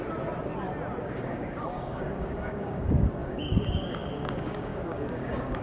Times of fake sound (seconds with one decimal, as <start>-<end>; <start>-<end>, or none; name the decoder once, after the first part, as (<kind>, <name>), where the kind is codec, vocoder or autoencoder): 1.0-5.6 (codec, DAC)